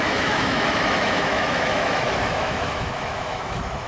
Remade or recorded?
remade